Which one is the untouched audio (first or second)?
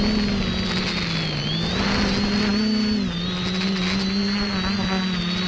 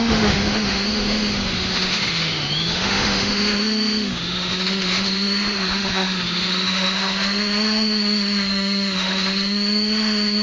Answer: first